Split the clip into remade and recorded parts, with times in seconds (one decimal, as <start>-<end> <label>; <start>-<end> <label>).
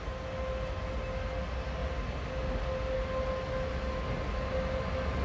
0.0-5.2 recorded